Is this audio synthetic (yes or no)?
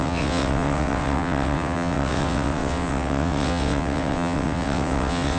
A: yes